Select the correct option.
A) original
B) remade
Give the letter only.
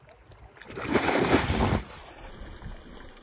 A